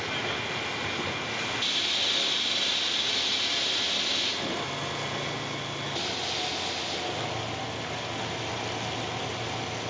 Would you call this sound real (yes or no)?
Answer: yes